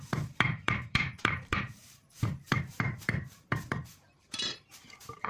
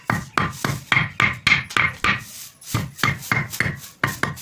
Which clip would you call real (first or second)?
second